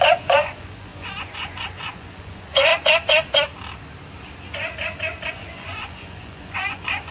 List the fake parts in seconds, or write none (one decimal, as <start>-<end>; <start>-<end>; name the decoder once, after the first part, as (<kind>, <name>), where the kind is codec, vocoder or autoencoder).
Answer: 0.0-2.7 (vocoder, Vocos); 5.3-7.1